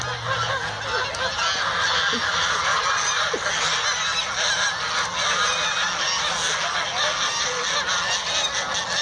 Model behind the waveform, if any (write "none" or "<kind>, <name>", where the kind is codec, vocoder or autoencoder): none